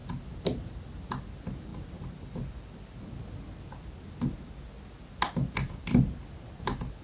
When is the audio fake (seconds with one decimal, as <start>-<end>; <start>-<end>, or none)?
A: none